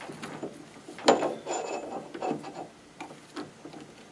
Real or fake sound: real